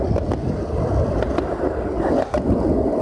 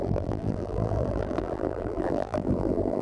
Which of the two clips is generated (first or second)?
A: second